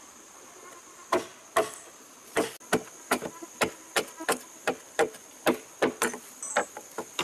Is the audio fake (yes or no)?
no